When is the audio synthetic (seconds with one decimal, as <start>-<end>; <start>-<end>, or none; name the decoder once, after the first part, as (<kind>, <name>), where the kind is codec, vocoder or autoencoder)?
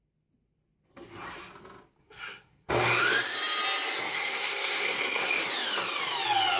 2.0-2.7 (codec, SNAC); 4.1-5.3